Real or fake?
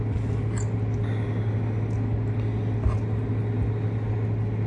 real